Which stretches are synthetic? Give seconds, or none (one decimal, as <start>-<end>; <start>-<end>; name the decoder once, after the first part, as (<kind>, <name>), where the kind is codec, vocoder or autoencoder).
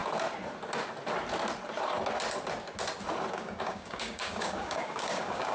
3.3-5.5 (codec, DAC)